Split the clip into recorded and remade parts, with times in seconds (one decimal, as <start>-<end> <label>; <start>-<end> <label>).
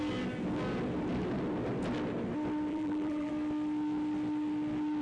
0.0-2.7 recorded; 2.7-3.3 remade; 3.3-5.0 recorded